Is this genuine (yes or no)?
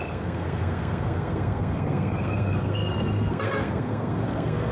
no